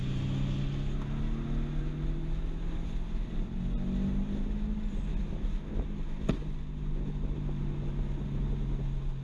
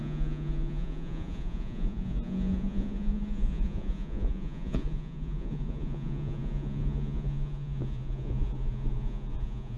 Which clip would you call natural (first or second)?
first